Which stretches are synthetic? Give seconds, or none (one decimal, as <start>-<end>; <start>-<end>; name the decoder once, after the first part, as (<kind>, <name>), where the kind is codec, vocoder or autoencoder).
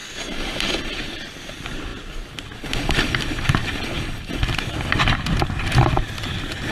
none